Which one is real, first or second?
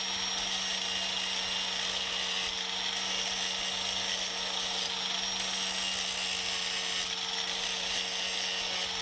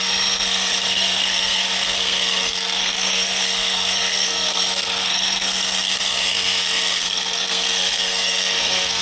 first